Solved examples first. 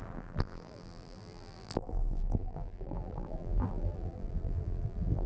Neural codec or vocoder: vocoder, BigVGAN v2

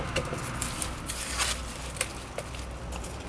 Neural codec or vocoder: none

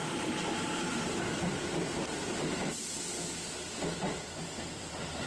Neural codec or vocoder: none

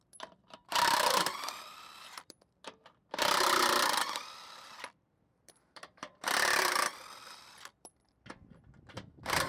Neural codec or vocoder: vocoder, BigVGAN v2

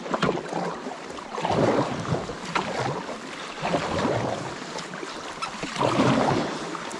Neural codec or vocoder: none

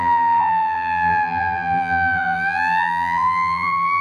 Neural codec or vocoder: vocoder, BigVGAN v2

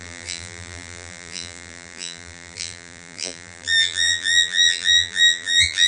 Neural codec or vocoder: vocoder, BigVGAN v2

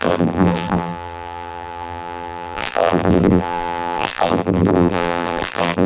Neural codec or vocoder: vocoder, BigVGAN v2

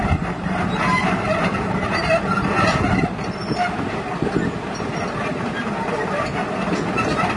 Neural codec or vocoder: vocoder, BigVGAN v2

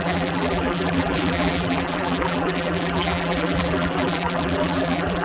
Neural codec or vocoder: vocoder, BigVGAN v2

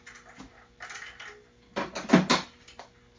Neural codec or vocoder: none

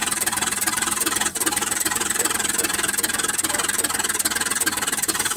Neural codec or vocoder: vocoder, BigVGAN v2